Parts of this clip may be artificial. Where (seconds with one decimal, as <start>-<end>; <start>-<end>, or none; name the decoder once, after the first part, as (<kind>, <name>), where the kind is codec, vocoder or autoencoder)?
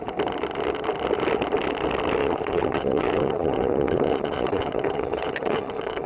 2.2-6.1 (vocoder, WaveNeXt)